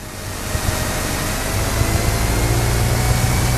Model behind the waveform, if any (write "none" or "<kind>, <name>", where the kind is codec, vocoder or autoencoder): none